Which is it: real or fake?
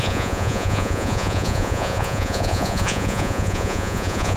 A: fake